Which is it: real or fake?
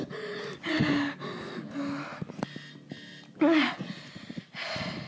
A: real